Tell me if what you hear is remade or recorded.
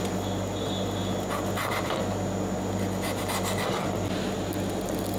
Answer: recorded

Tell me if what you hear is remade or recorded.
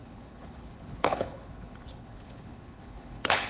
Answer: remade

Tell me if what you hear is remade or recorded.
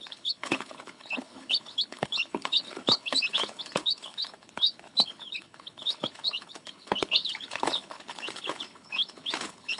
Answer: remade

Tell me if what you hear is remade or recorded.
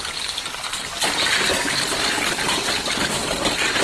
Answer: recorded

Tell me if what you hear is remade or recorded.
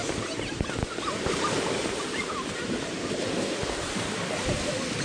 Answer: recorded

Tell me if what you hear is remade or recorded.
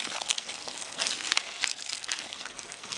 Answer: remade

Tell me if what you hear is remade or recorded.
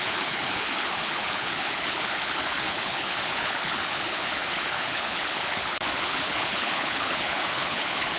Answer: remade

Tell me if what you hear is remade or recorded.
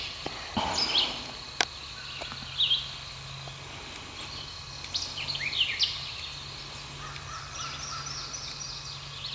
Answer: recorded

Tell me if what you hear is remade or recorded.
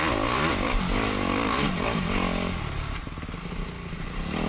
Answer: recorded